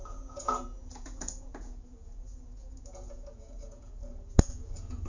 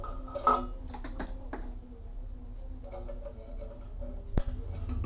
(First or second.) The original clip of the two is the second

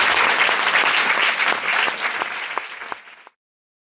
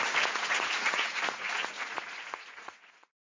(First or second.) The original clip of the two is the first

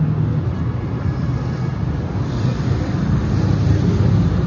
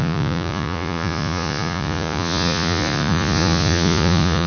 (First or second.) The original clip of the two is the first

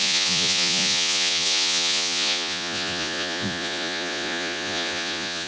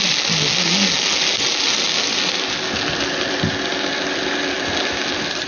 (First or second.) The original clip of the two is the second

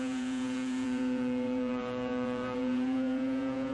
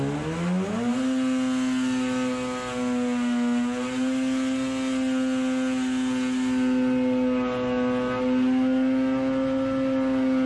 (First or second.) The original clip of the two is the second